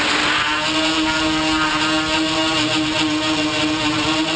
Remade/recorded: recorded